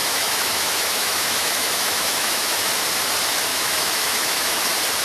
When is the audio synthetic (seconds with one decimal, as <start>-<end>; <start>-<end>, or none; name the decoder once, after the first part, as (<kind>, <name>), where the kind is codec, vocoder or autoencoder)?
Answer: 0.0-2.7 (autoencoder, DAC-VAE); 3.5-4.6